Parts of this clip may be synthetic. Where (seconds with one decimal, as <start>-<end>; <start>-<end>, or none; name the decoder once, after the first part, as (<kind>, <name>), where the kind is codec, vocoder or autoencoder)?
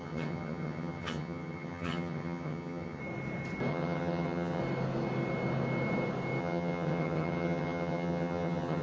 0.0-3.0 (vocoder, HiFi-GAN); 3.7-4.6; 6.4-8.8